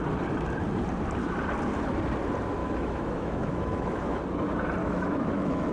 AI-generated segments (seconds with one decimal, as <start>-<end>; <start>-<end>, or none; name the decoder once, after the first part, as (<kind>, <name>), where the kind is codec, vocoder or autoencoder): 2.6-4.2 (autoencoder, DAC-VAE); 4.8-5.7